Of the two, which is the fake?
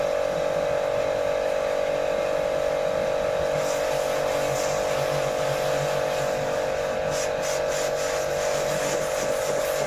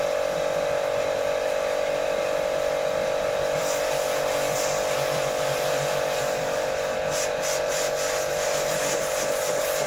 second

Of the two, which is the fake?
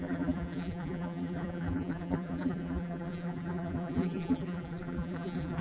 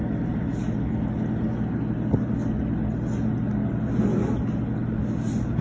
first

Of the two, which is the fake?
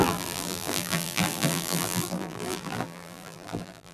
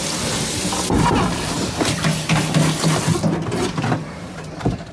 first